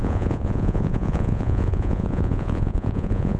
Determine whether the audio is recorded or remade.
remade